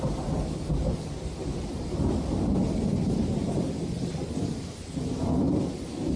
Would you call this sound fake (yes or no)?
yes